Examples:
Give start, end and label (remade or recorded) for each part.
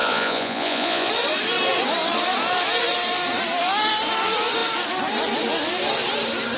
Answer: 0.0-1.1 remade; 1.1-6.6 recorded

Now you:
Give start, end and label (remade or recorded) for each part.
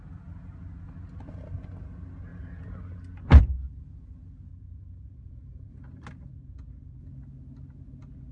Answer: 0.0-4.5 recorded; 4.5-5.7 remade; 5.7-6.3 recorded; 6.3-7.0 remade; 7.0-8.3 recorded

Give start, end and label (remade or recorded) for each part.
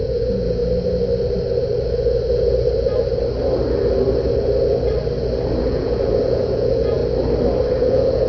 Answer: 0.0-0.6 remade; 0.6-5.6 recorded; 5.6-7.0 remade; 7.0-7.8 recorded; 7.8-8.3 remade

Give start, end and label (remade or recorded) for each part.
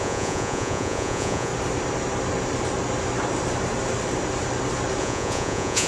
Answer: 0.0-1.5 remade; 1.5-5.0 recorded; 5.0-5.9 remade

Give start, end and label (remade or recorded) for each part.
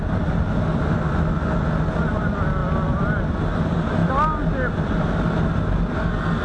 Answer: 0.0-6.4 recorded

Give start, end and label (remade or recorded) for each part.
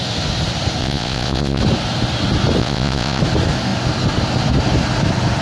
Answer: 0.0-0.8 recorded; 0.8-1.6 remade; 1.6-2.6 recorded; 2.6-3.2 remade; 3.2-5.4 recorded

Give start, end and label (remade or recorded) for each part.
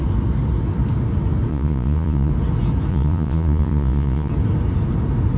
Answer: 0.0-1.5 recorded; 1.5-2.3 remade; 2.3-2.9 recorded; 2.9-4.3 remade; 4.3-5.4 recorded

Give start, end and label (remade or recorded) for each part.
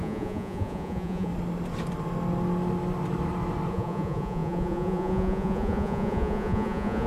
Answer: 0.0-1.3 remade; 1.3-3.7 recorded; 3.7-7.1 remade